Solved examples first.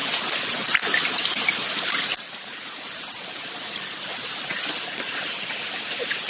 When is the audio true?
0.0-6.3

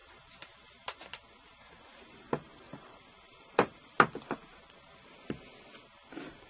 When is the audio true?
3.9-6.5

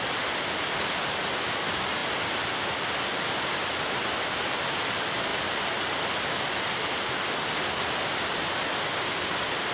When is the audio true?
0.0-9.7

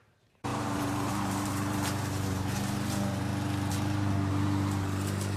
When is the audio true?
3.3-4.3

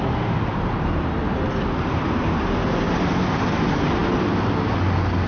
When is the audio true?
0.0-5.3

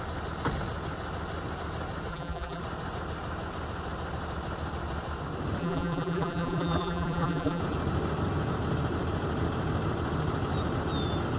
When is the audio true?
0.0-2.1; 2.6-5.6; 7.6-11.4

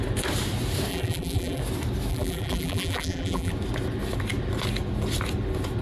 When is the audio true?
0.0-0.9; 1.6-2.1; 3.5-5.8